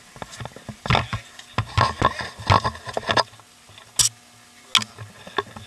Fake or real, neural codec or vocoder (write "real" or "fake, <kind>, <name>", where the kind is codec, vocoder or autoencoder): real